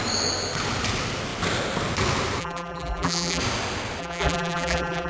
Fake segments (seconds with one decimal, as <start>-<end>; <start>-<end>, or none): 2.4-3.4; 4.0-5.1